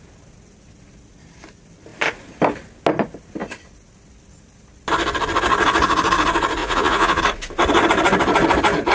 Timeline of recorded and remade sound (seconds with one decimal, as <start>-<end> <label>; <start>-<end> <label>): 0.0-6.6 recorded; 6.6-7.2 remade; 7.2-8.9 recorded